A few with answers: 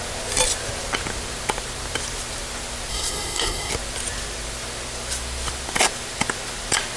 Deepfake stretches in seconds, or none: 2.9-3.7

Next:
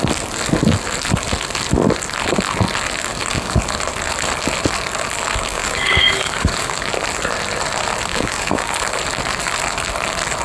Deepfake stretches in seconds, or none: 3.1-3.6; 5.5-6.9; 8.1-8.7